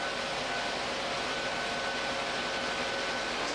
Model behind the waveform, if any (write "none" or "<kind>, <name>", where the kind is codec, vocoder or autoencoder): none